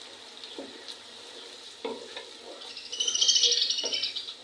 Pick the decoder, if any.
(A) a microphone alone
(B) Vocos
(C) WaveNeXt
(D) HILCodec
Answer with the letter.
A